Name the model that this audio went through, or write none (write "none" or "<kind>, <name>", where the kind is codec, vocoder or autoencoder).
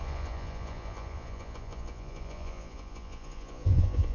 vocoder, Vocos